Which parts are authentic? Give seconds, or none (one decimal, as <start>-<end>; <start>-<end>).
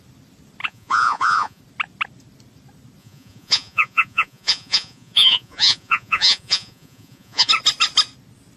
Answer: 0.0-0.6; 1.6-3.0; 7.5-8.6